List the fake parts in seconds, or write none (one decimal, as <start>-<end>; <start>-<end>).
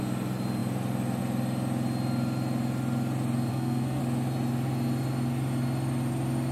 3.5-4.0